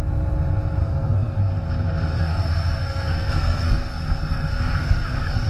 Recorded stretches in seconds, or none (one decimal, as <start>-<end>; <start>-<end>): 0.0-0.8; 1.5-2.1